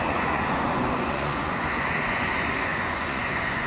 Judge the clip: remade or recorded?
remade